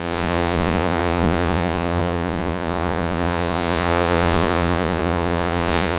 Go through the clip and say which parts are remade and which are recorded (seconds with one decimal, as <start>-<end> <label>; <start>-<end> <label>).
0.0-6.0 remade